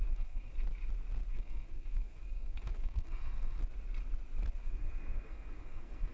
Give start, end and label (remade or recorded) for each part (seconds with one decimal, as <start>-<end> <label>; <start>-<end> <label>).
0.0-0.5 remade; 0.5-1.3 recorded; 1.3-3.6 remade; 3.6-4.5 recorded; 4.5-6.1 remade